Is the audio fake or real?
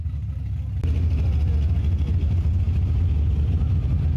real